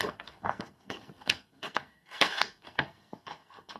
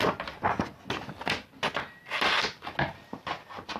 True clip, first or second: second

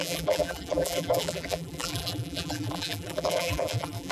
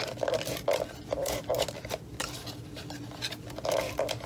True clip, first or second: second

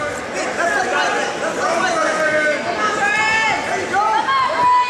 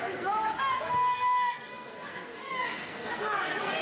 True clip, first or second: first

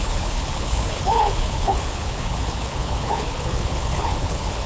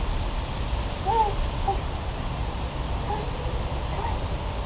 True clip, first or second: second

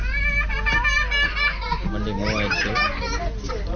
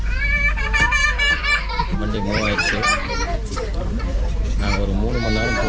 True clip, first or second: first